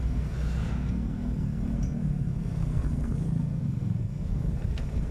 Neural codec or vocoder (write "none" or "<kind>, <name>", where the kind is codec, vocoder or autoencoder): codec, SNAC